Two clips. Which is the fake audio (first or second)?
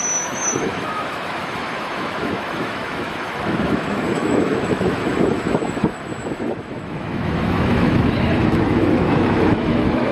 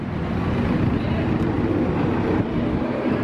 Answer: first